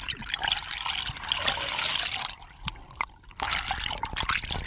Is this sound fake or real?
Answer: real